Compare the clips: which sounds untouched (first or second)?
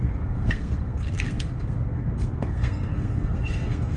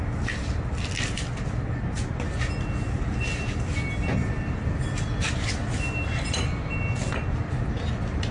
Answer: second